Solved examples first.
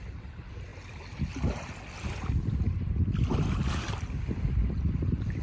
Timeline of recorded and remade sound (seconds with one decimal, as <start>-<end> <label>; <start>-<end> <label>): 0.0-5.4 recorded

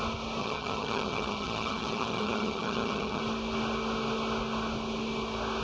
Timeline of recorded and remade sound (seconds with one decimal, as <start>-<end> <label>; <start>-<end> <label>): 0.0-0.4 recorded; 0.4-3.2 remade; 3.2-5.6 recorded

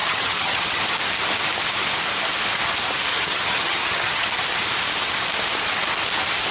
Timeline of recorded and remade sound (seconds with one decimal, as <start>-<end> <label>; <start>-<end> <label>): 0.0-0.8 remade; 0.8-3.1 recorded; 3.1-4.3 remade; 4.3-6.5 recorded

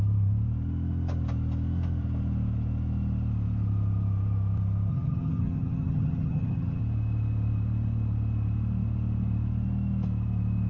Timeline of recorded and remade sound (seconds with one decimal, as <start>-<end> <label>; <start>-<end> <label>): 0.0-4.9 recorded; 4.9-6.8 remade; 6.8-10.7 recorded

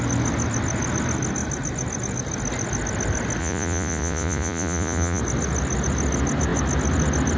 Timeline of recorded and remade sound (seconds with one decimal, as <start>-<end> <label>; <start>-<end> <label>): 0.0-3.4 recorded; 3.4-5.2 remade; 5.2-7.4 recorded

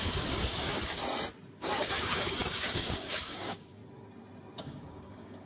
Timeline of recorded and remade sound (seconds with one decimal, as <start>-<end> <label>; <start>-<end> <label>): 0.0-1.0 remade; 1.0-1.6 recorded; 1.6-3.8 remade; 3.8-4.6 recorded; 4.6-5.5 remade

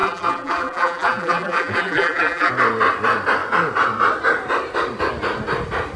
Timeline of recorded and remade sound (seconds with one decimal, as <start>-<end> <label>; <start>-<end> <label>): 0.0-2.5 remade; 2.5-6.0 recorded